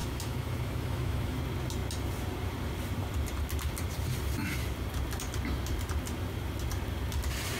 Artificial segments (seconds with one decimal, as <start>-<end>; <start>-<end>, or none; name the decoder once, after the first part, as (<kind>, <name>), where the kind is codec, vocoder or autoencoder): 0.0-1.4 (autoencoder, DAC-VAE)